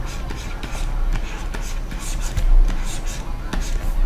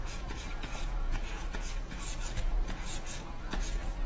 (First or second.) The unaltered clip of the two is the first